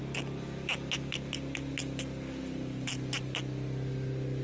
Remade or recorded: recorded